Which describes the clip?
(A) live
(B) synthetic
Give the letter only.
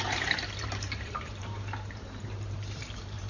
B